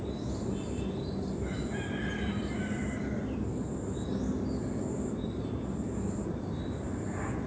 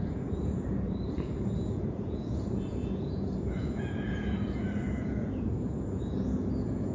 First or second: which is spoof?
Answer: second